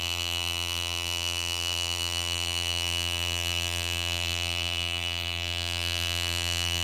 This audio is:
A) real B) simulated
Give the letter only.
B